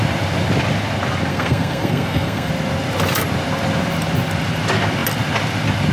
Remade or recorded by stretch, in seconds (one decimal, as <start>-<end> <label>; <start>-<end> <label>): 0.0-1.3 recorded; 1.3-2.5 remade; 2.5-5.9 recorded

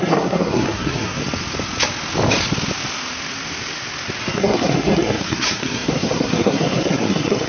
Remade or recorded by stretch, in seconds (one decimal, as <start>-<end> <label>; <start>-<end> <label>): 0.0-1.2 remade; 1.2-4.2 recorded; 4.2-7.5 remade